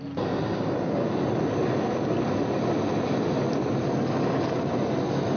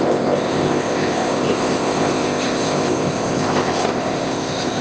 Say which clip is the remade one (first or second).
second